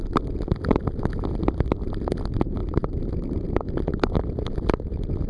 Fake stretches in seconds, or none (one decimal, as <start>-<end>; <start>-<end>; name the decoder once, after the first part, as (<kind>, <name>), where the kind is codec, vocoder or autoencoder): 2.6-4.2 (vocoder, BigVGAN v2)